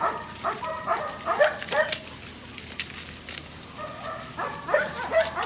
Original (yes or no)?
yes